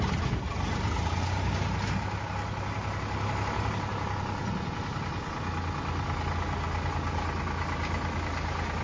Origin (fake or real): real